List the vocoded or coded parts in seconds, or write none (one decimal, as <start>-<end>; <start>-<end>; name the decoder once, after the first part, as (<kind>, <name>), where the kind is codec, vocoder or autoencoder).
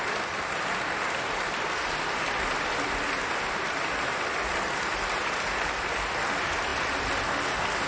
none